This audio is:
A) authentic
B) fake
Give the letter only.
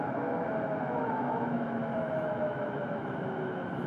B